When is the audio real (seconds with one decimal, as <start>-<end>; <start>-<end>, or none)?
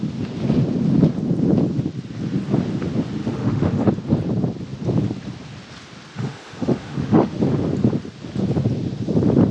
0.0-3.2; 3.9-6.1; 7.4-9.5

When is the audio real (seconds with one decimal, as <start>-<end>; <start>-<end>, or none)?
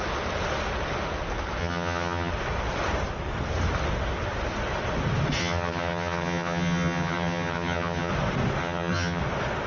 0.0-1.6; 2.3-5.4; 8.1-8.6; 9.2-9.7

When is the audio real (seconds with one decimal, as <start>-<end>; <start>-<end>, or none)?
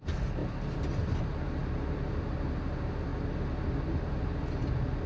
0.0-5.1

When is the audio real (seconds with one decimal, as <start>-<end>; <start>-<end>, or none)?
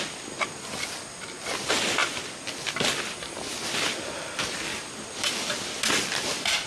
0.0-2.0; 3.9-4.7; 5.3-6.7